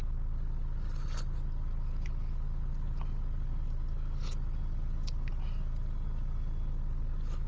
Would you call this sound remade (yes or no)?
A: no